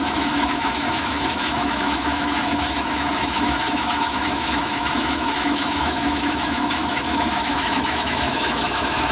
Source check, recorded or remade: remade